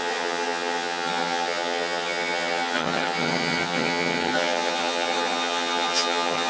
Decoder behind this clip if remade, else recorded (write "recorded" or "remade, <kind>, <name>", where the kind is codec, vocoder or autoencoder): remade, vocoder, HiFi-GAN